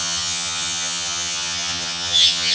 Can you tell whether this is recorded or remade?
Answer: remade